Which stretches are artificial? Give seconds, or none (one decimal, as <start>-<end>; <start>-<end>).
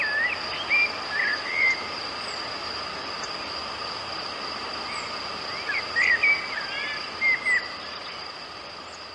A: none